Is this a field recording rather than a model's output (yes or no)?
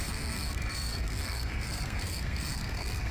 no